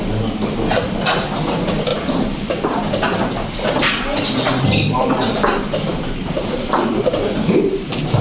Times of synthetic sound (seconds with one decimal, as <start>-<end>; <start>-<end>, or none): 1.9-2.7; 5.9-7.0